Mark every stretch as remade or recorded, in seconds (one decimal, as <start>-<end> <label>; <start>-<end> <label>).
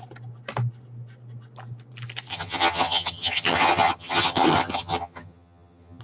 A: 0.0-2.3 recorded; 2.3-6.0 remade